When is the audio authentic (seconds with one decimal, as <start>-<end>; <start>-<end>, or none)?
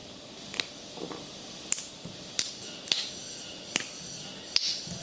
0.0-5.0